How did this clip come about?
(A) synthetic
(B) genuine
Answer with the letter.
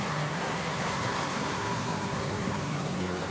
A